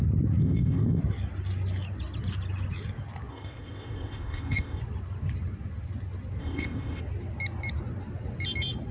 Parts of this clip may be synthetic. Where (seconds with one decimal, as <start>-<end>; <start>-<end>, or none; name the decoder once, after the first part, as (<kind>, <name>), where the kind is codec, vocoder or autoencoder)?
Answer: 0.4-1.0 (codec, ZipCodec); 3.3-4.8; 6.4-7.0